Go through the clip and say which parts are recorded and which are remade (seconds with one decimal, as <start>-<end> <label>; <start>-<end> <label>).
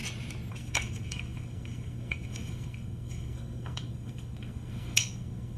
0.0-0.5 recorded; 0.5-5.6 remade